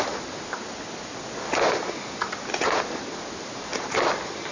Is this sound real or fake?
real